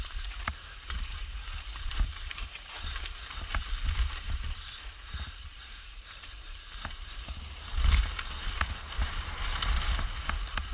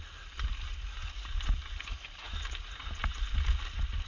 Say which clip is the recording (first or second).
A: second